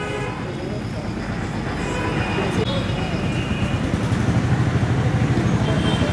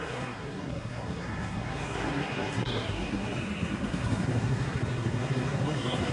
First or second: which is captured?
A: first